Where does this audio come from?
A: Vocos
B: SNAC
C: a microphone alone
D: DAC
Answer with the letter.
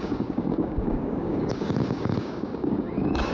D